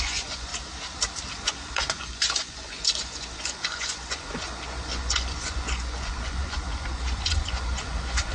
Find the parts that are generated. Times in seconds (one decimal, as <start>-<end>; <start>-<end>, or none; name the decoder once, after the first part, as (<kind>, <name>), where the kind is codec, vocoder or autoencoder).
0.0-0.5 (vocoder, Vocos); 1.4-8.3